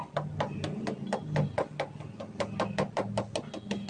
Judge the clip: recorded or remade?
recorded